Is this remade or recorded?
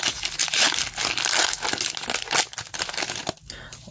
recorded